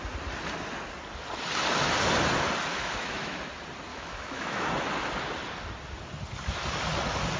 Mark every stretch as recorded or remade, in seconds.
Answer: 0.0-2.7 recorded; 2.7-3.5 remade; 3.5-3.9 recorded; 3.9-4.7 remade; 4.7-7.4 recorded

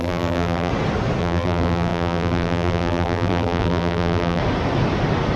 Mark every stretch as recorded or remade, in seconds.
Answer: 0.0-0.7 remade; 0.7-1.2 recorded; 1.2-4.4 remade; 4.4-5.4 recorded

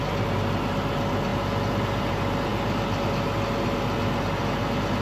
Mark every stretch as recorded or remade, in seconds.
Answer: 0.0-5.0 recorded